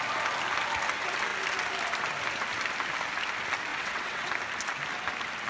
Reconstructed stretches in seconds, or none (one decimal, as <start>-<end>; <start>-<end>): 3.7-4.3